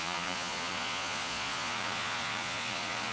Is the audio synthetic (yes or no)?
yes